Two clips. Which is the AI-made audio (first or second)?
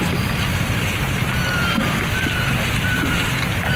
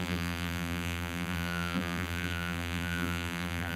second